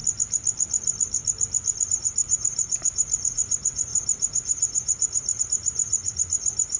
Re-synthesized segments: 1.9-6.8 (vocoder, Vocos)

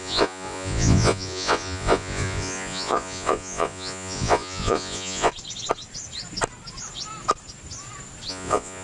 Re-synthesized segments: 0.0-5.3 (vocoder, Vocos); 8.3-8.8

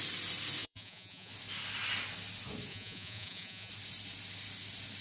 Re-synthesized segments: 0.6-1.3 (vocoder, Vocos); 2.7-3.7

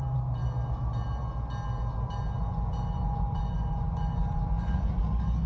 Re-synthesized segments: 2.4-5.0 (vocoder, Vocos)